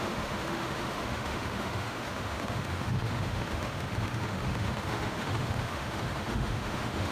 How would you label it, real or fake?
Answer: fake